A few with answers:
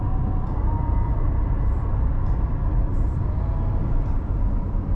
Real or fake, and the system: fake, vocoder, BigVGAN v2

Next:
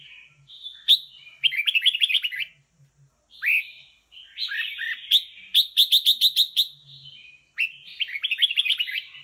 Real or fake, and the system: real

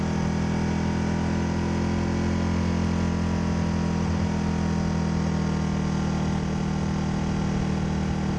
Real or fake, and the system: real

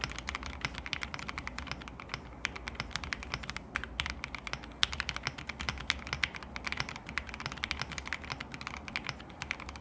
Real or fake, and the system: real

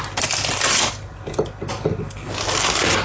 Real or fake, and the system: real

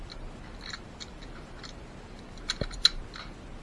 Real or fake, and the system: real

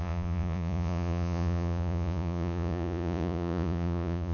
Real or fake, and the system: fake, vocoder, Vocos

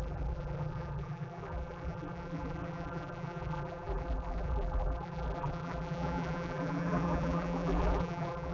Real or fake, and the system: fake, vocoder, BigVGAN v2